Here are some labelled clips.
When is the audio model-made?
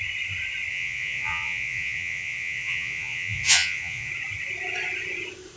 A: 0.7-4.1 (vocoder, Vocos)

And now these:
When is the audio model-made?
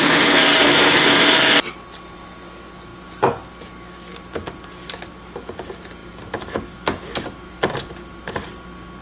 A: none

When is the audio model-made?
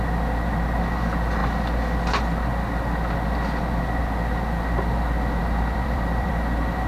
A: 5.4-6.3 (vocoder, BigVGAN v2)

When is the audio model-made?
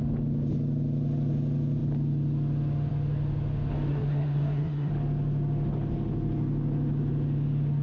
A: 3.9-4.9 (codec, SNAC)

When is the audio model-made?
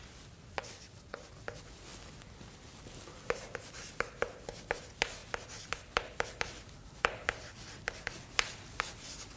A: 0.6-1.2 (vocoder, WaveNeXt)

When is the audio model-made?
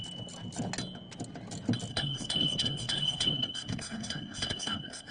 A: 1.9-5.1 (codec, SNAC)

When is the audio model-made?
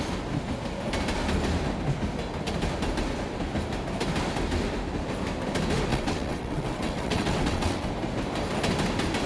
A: 5.9-7.9 (vocoder, WaveNeXt)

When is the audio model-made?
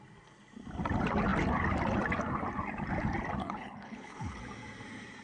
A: 3.4-4.4 (codec, HILCodec)